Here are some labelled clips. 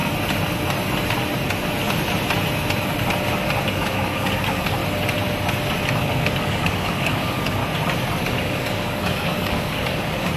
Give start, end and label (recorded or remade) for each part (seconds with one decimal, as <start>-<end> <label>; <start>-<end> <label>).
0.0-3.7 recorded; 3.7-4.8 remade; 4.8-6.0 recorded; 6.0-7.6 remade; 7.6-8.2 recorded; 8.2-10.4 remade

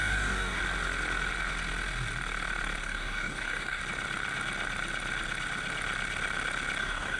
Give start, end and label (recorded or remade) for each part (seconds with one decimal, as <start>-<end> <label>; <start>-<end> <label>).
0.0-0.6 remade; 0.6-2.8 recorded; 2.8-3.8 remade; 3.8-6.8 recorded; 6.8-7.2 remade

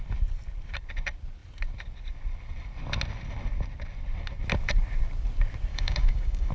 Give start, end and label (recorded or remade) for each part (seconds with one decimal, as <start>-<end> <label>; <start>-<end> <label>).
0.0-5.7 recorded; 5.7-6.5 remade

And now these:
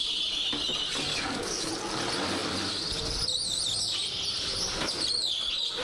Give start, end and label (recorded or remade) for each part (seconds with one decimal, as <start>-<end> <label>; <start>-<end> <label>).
0.0-1.1 recorded; 1.1-1.7 remade; 1.7-5.8 recorded